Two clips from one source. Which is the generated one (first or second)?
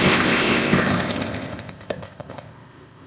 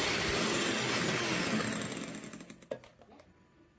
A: first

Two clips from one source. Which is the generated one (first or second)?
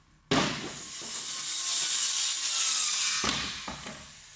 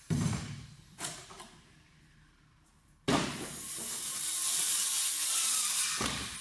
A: second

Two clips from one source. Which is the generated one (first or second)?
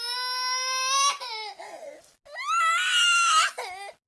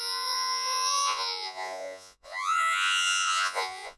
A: second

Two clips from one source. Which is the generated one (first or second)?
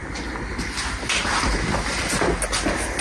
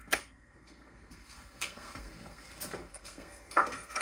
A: second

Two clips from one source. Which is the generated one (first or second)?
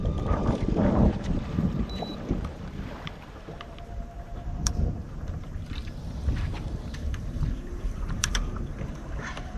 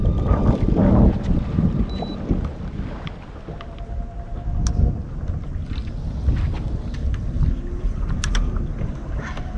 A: first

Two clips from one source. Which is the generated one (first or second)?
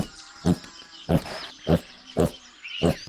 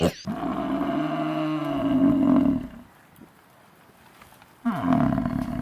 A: first